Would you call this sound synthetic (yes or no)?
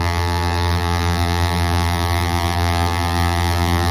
yes